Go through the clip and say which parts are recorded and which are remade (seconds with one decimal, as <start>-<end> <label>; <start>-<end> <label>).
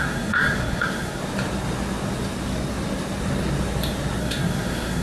0.0-1.2 remade; 1.2-4.2 recorded; 4.2-5.0 remade